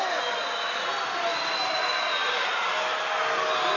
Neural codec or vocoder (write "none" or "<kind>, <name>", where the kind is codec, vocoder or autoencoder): none